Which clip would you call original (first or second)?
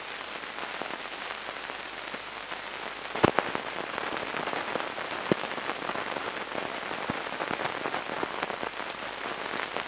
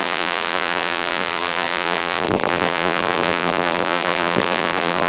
first